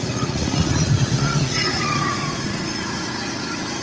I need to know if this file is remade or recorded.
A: remade